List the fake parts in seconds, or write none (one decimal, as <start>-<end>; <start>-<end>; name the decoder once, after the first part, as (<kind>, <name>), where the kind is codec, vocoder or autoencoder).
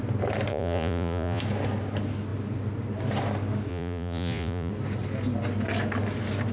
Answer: 0.5-1.4 (vocoder, Vocos); 3.7-4.7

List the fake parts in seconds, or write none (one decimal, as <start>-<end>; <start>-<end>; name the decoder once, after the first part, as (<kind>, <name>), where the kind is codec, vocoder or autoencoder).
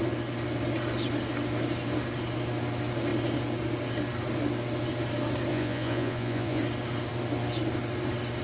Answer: 5.5-6.6 (vocoder, Vocos)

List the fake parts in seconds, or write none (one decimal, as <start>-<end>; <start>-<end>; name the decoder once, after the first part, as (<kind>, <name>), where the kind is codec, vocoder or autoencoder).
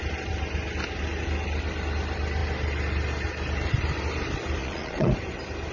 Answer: 4.6-5.1 (vocoder, Vocos)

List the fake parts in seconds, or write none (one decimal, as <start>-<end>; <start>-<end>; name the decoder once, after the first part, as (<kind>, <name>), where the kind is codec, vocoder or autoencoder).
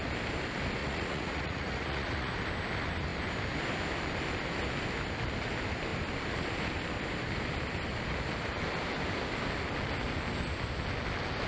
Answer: 0.8-2.3 (vocoder, Vocos)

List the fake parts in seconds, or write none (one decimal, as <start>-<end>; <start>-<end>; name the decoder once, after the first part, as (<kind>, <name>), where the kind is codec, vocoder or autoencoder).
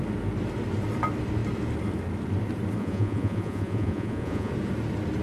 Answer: 2.8-4.5 (vocoder, Vocos)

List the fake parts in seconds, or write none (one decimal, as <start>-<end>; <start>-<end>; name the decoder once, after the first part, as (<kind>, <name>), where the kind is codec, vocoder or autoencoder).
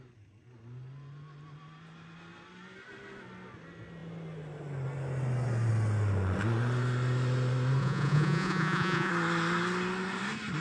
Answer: 7.8-9.1 (vocoder, Vocos)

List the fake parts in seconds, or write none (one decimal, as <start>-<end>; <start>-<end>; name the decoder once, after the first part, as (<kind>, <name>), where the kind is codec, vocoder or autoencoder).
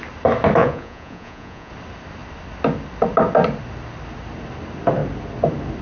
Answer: 0.6-1.7 (vocoder, Vocos)